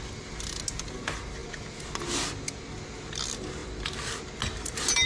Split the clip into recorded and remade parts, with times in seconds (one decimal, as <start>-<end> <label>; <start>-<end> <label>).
0.0-5.1 recorded